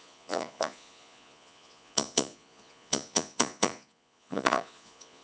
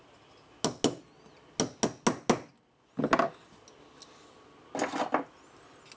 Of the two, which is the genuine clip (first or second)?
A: second